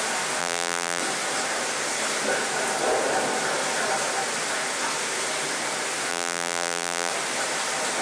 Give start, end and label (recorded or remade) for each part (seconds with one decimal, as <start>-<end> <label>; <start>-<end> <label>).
0.0-0.4 recorded; 0.4-1.0 remade; 1.0-6.1 recorded; 6.1-7.1 remade; 7.1-8.0 recorded